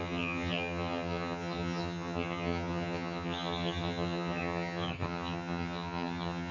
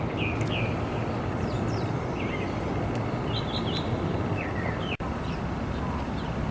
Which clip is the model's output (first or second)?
first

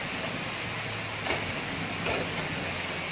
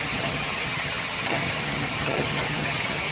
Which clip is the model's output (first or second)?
second